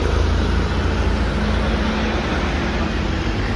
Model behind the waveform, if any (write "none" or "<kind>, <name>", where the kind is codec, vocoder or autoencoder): none